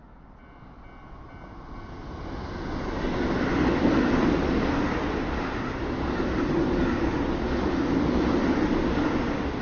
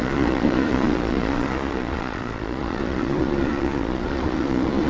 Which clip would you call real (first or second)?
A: first